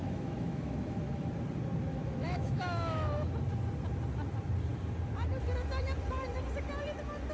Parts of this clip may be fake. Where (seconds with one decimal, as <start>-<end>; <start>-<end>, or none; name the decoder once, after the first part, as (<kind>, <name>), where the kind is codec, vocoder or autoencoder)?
0.0-1.3 (autoencoder, DAC-VAE); 1.9-3.3